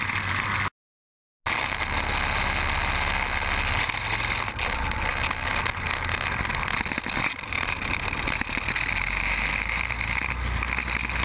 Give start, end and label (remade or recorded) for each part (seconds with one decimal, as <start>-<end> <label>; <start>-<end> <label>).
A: 0.0-11.2 recorded